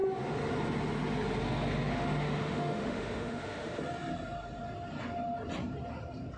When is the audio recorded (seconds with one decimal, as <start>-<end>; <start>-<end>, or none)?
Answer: 0.0-1.9; 3.8-6.4